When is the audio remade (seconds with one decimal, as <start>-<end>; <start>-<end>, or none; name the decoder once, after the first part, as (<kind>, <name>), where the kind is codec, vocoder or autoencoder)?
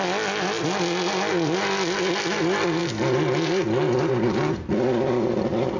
none